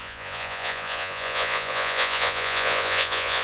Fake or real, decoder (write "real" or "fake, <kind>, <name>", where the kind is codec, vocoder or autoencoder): fake, vocoder, Vocos